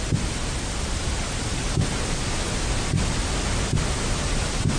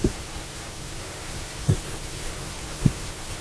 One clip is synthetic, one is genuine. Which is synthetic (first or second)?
second